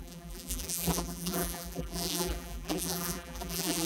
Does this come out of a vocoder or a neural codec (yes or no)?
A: yes